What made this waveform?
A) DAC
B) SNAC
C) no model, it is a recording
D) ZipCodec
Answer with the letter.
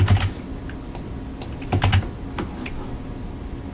C